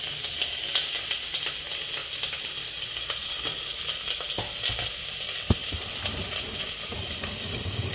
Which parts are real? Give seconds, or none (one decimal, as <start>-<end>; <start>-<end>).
0.0-7.9